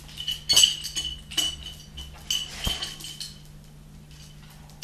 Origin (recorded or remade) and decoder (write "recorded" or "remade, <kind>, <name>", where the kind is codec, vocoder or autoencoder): recorded